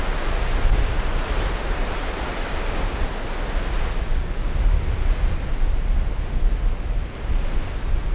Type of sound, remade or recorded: recorded